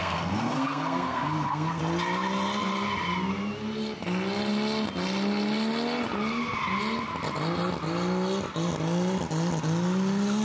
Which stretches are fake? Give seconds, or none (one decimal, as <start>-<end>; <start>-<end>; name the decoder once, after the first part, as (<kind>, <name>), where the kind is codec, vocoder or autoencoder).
0.0-1.8 (codec, SNAC)